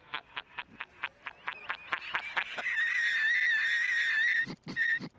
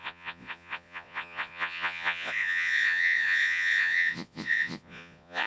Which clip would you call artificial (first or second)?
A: second